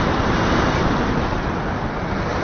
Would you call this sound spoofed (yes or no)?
no